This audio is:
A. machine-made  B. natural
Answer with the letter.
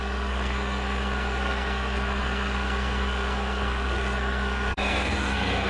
A